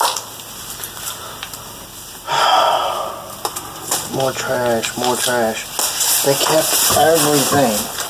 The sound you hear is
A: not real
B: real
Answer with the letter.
B